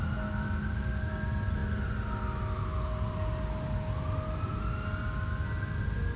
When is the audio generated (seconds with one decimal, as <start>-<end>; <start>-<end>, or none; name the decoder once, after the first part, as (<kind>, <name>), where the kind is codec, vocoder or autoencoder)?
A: none